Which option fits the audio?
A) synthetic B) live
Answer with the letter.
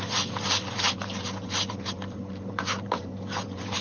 A